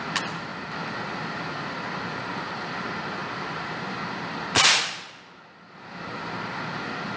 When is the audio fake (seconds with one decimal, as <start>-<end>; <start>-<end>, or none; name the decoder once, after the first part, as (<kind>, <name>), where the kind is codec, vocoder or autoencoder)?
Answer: none